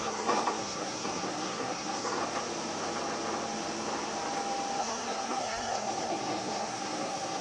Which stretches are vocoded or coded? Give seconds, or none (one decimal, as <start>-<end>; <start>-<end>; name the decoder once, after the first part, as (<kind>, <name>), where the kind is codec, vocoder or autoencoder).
0.0-2.2 (codec, SNAC); 4.8-7.4